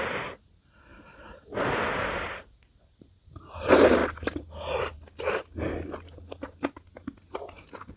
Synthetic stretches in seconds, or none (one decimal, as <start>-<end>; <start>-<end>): none